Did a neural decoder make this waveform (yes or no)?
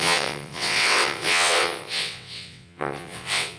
yes